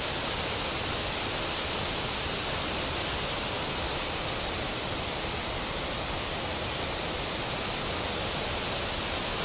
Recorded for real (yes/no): yes